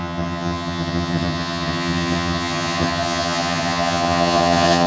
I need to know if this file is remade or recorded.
remade